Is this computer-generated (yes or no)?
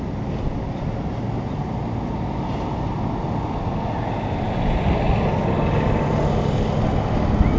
no